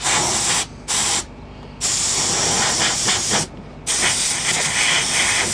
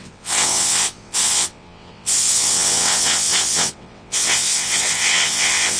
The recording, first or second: first